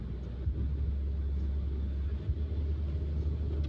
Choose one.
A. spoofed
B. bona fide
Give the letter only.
B